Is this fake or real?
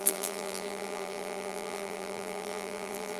fake